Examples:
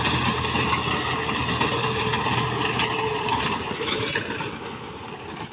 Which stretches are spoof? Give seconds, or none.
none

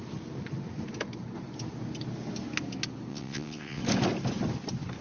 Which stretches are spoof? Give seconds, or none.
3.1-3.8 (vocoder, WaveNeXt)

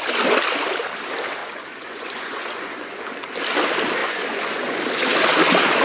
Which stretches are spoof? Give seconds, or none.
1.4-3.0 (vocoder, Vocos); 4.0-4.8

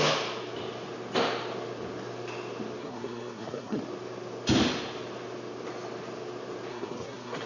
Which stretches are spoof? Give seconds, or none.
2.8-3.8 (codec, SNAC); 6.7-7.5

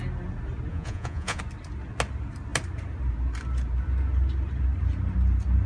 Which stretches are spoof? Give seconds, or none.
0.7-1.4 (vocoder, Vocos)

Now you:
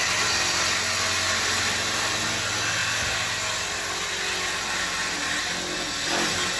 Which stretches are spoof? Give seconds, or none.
none

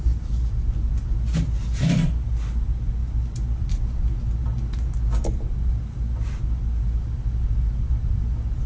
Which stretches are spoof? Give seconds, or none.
none